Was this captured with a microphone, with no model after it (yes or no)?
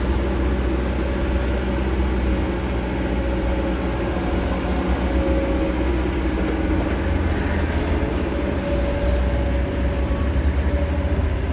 yes